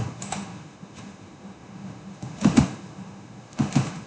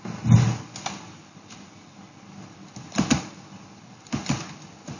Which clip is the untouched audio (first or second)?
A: second